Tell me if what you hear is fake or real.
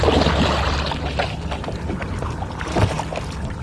real